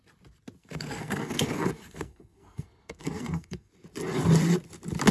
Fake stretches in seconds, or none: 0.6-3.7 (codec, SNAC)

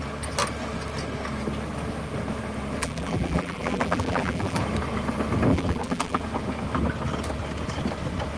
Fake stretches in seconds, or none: 2.8-4.6 (vocoder, BigVGAN v2); 5.5-6.2

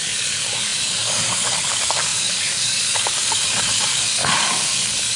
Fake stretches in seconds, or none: 0.0-5.2 (codec, DAC)

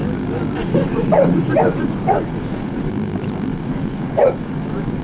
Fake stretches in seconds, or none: 0.6-2.9 (vocoder, Vocos); 3.5-5.0

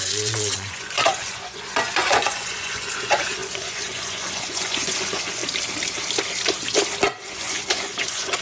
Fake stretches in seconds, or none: 0.0-5.4 (vocoder, Vocos); 7.2-8.4

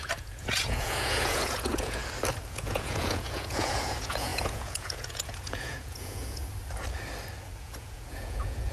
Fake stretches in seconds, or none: 0.0-2.0 (vocoder, Vocos); 2.5-6.4; 7.6-8.7

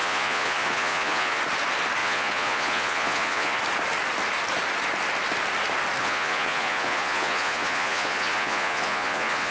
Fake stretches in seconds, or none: 0.0-1.4 (vocoder, Vocos); 2.0-3.6; 6.0-9.5

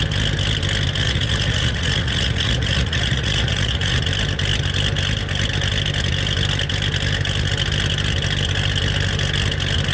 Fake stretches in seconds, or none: 1.0-4.0 (vocoder, Vocos)